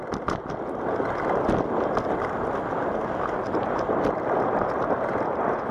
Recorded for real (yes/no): no